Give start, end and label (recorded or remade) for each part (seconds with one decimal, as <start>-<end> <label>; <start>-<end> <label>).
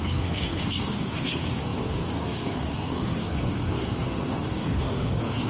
0.0-5.5 remade